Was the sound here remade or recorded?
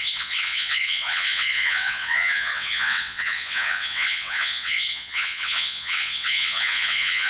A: remade